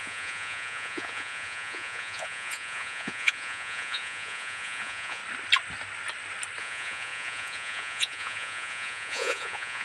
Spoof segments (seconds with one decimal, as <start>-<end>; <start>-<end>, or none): 0.0-5.2; 6.6-9.8